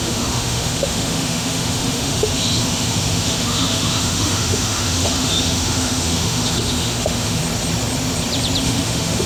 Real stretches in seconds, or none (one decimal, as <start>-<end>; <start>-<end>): 7.4-8.6